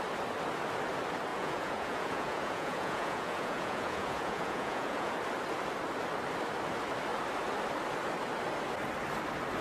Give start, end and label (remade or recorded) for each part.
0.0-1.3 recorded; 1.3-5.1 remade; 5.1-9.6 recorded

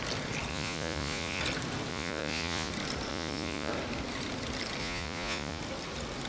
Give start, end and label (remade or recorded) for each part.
0.0-0.5 recorded; 0.5-1.4 remade; 1.4-1.9 recorded; 1.9-2.7 remade; 2.7-3.1 recorded; 3.1-3.7 remade; 3.7-4.8 recorded; 4.8-5.6 remade; 5.6-6.3 recorded

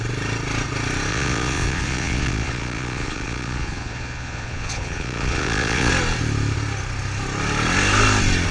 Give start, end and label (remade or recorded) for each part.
0.0-1.1 recorded; 1.1-5.9 remade; 5.9-8.5 recorded

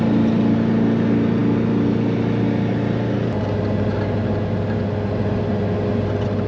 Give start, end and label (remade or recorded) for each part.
0.0-6.5 recorded